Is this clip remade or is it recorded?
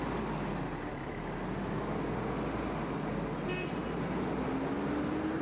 recorded